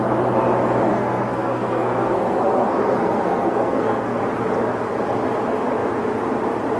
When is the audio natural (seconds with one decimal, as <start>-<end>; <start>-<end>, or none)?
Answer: 0.0-0.9; 4.2-6.8